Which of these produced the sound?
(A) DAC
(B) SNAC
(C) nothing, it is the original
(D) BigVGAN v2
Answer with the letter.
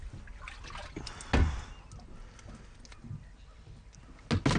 C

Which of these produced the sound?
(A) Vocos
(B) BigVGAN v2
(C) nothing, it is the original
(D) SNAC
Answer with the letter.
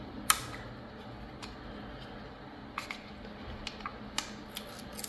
C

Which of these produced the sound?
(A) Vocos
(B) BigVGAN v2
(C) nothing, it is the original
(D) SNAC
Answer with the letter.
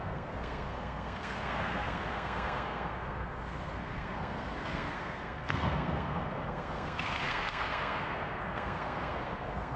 D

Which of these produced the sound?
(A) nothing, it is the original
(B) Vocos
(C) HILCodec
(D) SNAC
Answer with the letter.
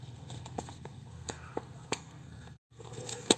D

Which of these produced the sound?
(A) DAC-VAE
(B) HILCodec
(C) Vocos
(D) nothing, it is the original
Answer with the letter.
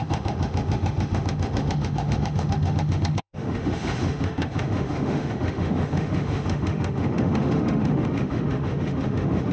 A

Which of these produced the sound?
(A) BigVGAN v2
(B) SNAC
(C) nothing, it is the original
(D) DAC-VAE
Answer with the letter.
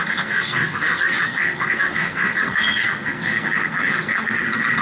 B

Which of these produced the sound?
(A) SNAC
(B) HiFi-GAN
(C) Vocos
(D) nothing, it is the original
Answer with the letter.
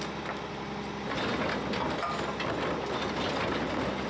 D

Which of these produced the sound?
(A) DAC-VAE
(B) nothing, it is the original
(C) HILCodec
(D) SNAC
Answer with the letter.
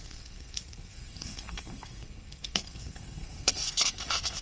D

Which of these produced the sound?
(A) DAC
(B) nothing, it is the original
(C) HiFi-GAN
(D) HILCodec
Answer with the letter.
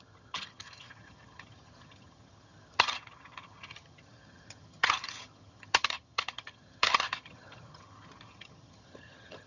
C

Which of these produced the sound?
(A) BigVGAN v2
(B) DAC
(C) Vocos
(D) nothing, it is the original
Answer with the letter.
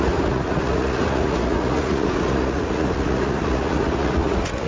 C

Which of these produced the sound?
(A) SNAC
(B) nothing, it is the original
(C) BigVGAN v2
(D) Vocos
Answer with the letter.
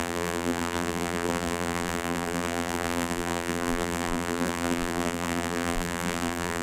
C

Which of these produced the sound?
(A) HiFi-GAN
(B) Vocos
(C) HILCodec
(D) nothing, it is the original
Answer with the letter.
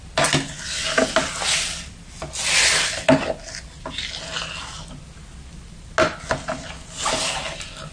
D